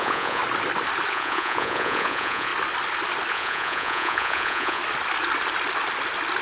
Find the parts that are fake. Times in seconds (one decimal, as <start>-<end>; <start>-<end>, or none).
0.0-0.4; 1.1-2.5; 3.3-4.8